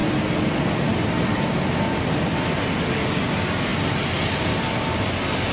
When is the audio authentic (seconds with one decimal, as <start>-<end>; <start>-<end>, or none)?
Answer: 0.0-5.5